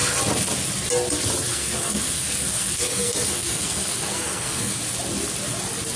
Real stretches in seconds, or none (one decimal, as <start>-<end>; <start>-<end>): 0.0-1.5; 4.8-6.0